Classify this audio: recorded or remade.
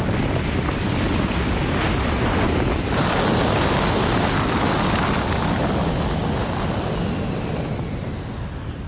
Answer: recorded